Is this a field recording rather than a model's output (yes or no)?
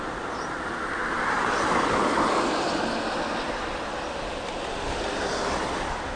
yes